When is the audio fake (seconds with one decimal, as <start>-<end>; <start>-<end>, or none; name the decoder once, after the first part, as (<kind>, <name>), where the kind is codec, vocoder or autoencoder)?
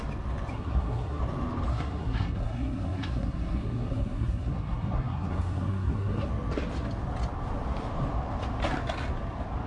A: 0.5-1.2 (codec, SNAC); 1.7-6.3